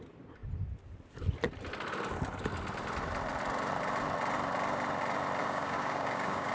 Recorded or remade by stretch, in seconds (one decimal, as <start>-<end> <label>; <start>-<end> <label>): 0.0-5.4 recorded; 5.4-6.5 remade